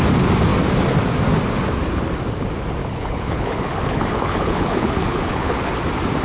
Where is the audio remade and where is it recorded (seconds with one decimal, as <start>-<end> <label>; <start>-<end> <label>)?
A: 0.0-2.8 recorded; 2.8-5.8 remade; 5.8-6.2 recorded